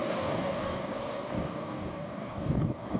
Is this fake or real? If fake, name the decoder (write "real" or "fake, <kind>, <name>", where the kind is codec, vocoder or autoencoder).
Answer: fake, codec, DAC